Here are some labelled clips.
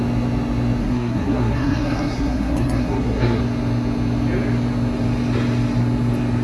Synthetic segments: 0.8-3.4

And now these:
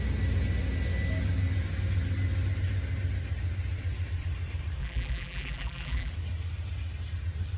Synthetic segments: 4.8-6.1

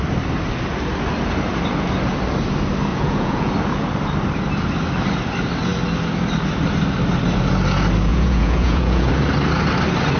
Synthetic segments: 2.9-3.5; 8.1-9.1

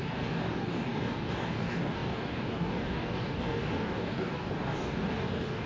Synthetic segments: 0.0-5.7

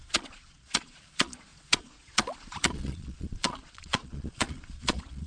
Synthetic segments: 0.0-5.3

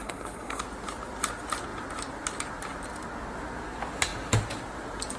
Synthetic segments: 0.0-0.6

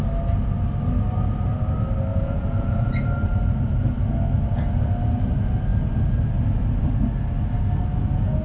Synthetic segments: 2.1-3.0